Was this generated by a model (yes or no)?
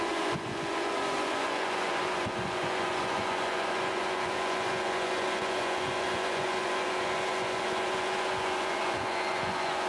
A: yes